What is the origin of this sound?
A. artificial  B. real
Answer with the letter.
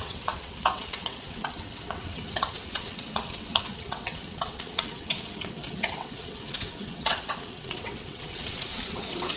A